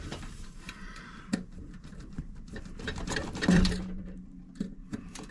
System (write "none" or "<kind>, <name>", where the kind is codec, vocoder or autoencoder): vocoder, BigVGAN v2